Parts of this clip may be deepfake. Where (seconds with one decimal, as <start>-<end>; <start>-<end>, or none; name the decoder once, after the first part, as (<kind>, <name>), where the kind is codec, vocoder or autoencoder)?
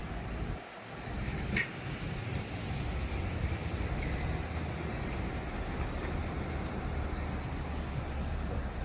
none